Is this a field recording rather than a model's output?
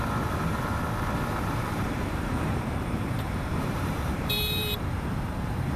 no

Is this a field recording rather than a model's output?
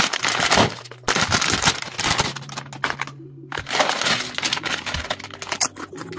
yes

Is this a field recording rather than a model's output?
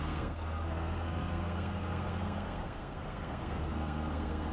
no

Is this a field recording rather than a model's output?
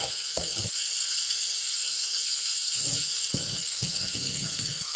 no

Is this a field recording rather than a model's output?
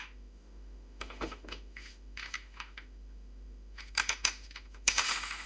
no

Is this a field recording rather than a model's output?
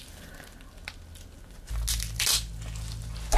yes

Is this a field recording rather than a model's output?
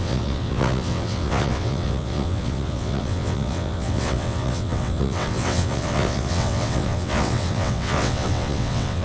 no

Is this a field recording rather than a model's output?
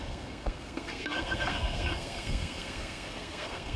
no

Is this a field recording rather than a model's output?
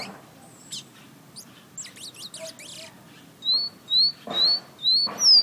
yes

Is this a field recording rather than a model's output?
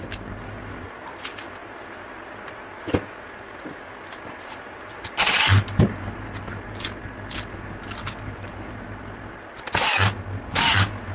yes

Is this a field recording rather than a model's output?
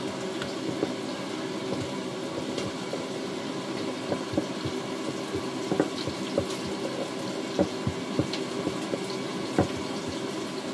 yes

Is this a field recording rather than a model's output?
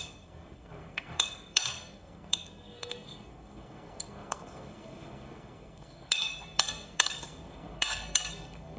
no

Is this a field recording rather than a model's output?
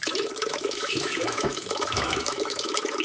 no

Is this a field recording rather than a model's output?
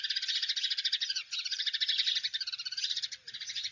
yes